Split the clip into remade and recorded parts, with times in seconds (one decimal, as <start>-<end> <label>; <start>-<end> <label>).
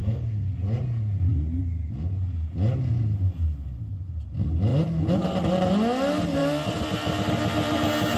0.0-0.5 remade; 0.5-8.2 recorded